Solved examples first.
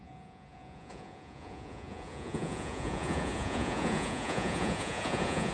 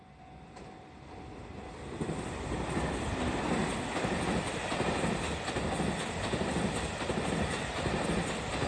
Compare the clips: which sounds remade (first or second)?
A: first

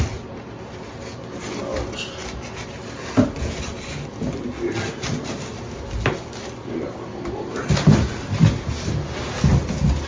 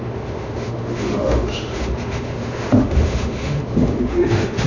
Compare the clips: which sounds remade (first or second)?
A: second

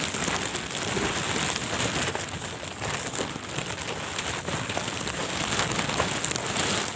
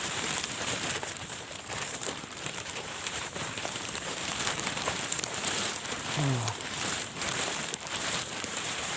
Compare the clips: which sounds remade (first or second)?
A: second